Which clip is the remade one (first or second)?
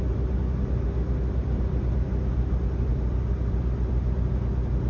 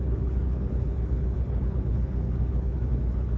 second